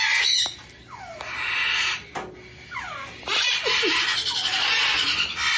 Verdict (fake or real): real